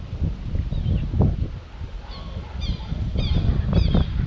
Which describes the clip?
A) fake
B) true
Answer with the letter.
B